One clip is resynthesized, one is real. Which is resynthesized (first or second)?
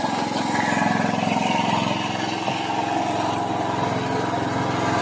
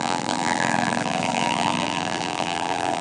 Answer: second